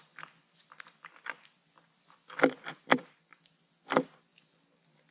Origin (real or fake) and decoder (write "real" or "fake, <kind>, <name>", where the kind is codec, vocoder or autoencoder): fake, vocoder, BigVGAN v2